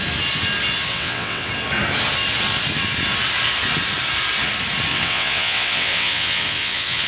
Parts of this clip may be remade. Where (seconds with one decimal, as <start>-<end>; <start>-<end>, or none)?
0.9-1.5; 4.9-7.1